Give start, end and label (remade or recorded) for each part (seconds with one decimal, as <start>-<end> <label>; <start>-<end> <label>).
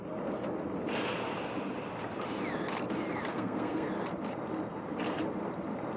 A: 0.0-3.3 recorded; 3.3-3.9 remade; 3.9-6.0 recorded